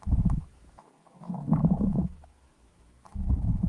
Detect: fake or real fake